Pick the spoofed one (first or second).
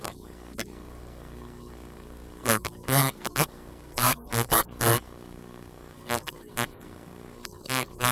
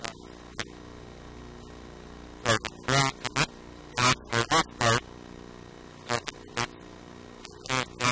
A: first